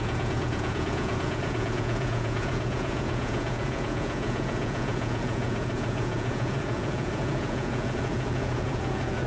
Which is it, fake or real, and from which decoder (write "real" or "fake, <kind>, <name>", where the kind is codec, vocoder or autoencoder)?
fake, vocoder, Vocos